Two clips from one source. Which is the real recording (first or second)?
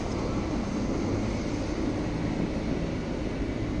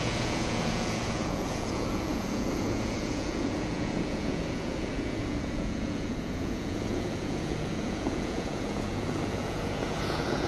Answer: first